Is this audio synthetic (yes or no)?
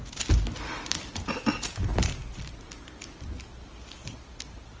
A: no